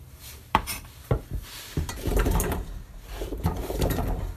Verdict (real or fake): fake